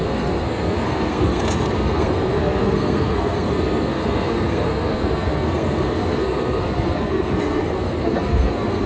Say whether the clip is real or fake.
fake